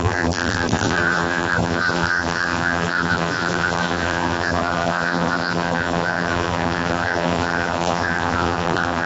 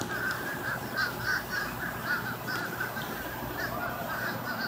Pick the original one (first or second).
second